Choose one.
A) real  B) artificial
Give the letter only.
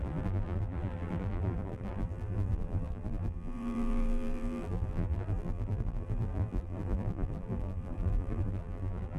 B